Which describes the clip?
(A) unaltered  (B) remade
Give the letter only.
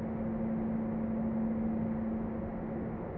A